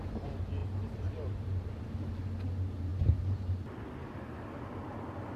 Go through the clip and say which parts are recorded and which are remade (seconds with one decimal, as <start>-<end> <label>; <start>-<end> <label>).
0.0-0.6 recorded; 0.6-1.7 remade; 1.7-2.9 recorded; 2.9-3.5 remade; 3.5-5.4 recorded